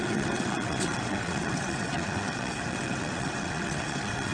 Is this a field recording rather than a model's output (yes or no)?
no